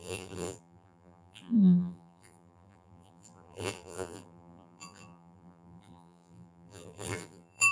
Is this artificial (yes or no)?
yes